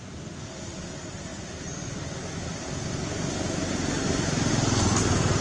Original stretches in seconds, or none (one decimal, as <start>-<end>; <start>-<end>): 0.0-5.4

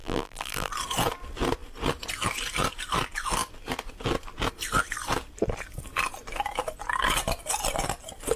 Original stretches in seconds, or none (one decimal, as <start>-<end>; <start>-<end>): 0.7-8.4